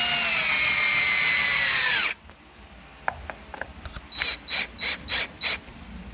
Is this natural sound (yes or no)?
yes